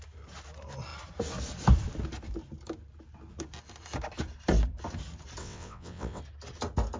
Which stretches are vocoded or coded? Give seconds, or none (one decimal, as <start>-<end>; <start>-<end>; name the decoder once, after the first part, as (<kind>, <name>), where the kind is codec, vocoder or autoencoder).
5.4-6.2 (vocoder, WaveNeXt)